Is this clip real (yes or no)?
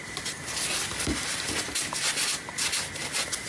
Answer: yes